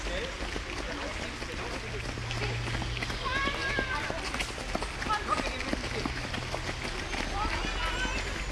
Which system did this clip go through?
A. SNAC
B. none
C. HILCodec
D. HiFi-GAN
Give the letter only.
B